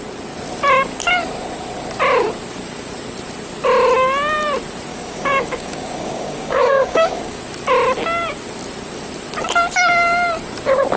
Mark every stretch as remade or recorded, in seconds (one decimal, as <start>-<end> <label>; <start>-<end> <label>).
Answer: 0.0-4.9 recorded; 4.9-7.4 remade; 7.4-11.0 recorded